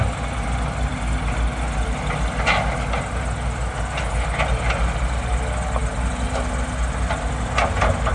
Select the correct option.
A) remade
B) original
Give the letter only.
B